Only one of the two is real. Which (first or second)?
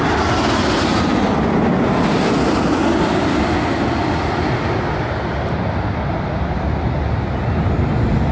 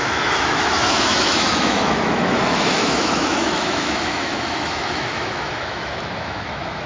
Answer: first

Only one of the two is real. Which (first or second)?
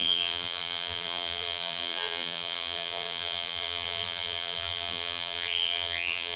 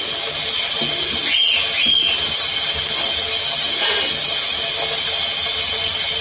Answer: second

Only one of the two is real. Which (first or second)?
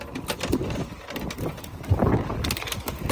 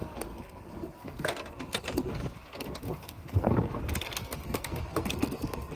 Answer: first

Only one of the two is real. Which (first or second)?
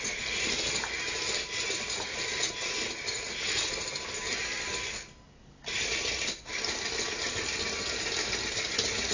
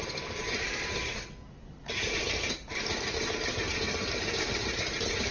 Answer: first